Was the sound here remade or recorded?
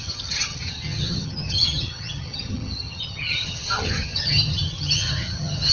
remade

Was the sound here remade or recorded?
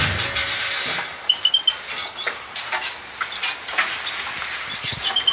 recorded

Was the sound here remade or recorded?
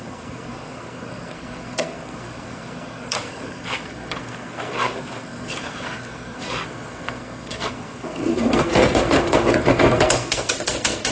remade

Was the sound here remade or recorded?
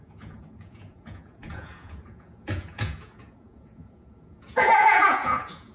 remade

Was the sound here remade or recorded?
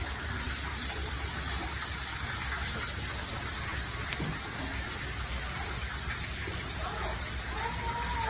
recorded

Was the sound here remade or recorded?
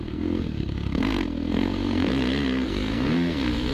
remade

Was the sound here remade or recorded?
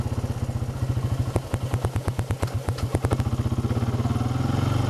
recorded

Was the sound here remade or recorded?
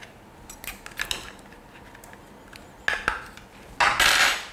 recorded